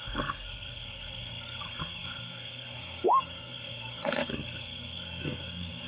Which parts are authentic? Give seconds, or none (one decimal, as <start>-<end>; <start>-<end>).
none